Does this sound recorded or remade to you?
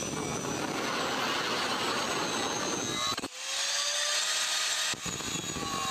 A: recorded